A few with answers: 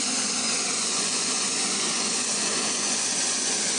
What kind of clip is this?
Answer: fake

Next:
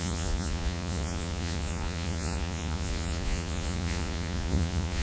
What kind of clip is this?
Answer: fake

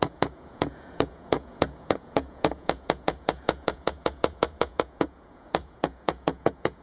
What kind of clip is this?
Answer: fake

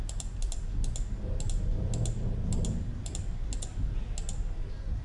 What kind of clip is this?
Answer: real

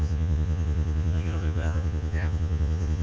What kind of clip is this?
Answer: fake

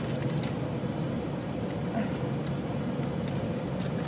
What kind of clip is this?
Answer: real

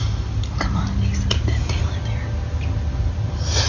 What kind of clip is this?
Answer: real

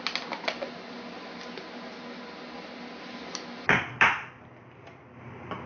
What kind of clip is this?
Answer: real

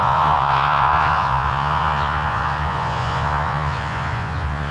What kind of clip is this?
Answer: fake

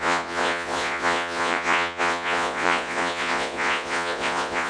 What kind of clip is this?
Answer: fake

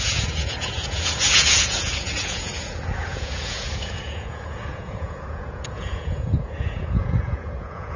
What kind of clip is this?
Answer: fake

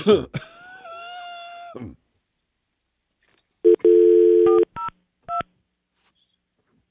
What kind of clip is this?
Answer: real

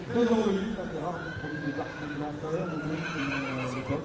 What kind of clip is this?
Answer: fake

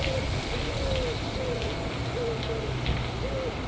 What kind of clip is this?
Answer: real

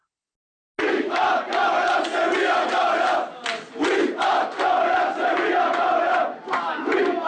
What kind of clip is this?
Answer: real